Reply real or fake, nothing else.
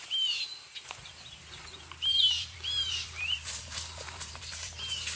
fake